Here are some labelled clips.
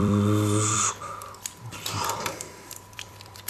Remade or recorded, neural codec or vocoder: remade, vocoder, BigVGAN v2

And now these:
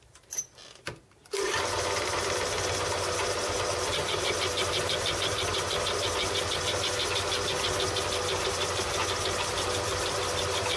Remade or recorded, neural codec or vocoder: recorded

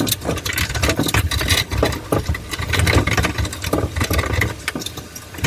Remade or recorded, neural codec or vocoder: recorded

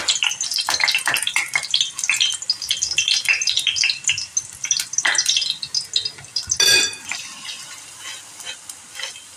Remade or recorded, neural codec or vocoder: recorded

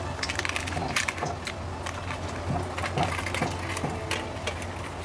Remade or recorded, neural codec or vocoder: recorded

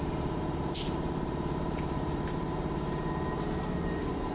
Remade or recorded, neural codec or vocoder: remade, vocoder, BigVGAN v2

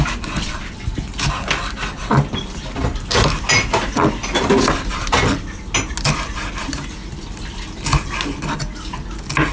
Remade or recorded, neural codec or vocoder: recorded